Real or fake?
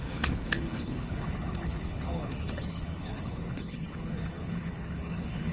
fake